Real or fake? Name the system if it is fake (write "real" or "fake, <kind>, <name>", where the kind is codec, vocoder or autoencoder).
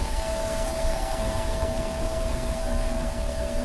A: fake, codec, SNAC